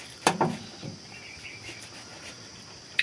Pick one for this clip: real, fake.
real